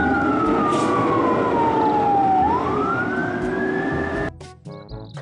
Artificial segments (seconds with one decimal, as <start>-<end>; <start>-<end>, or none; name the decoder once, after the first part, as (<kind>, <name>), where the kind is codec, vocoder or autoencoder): none